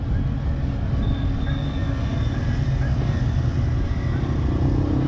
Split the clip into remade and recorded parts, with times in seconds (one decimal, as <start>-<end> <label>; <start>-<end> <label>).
0.0-5.1 recorded